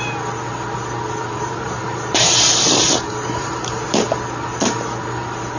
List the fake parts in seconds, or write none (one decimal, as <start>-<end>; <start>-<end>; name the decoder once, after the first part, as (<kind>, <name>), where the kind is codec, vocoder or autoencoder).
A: 1.2-4.0 (vocoder, BigVGAN v2)